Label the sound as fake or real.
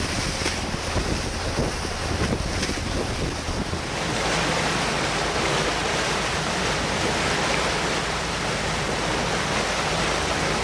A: real